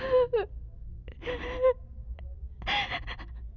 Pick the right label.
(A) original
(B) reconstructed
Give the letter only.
A